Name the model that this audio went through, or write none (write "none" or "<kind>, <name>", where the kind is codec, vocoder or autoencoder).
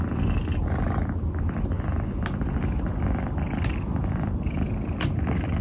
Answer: none